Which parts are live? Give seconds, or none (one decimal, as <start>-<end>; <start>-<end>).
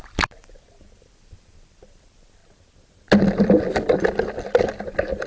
2.4-3.2